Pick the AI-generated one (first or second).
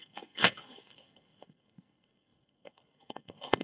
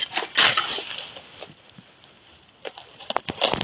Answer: first